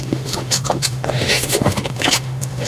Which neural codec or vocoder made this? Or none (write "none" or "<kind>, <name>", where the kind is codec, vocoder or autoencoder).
autoencoder, DAC-VAE